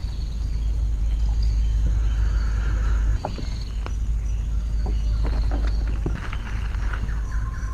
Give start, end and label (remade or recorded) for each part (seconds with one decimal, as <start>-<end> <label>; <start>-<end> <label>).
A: 0.0-7.7 recorded